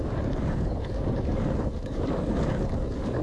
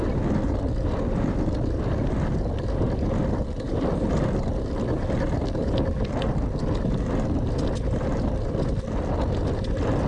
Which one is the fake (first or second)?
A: first